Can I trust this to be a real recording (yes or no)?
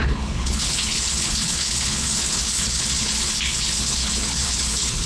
no